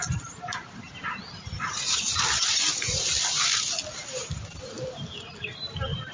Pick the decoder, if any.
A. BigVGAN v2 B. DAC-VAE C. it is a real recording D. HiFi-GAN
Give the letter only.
C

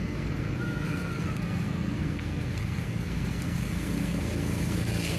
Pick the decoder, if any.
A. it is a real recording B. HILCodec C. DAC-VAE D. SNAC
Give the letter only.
D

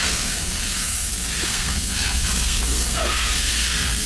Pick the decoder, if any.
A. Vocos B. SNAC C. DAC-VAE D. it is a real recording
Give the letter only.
B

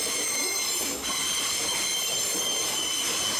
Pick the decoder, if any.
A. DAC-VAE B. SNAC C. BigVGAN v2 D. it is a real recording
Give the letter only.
D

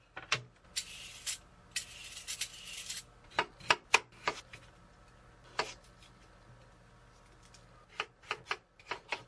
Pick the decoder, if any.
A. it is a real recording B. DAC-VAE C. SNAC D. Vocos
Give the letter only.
A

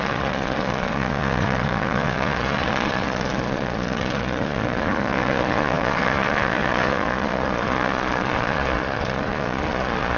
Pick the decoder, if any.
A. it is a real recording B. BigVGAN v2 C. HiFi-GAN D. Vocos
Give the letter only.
D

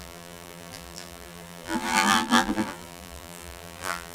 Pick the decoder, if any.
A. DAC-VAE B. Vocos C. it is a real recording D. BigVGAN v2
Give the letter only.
D